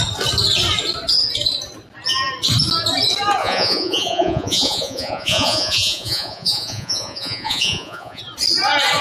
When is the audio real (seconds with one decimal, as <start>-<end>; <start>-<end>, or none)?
0.0-3.4; 8.2-9.0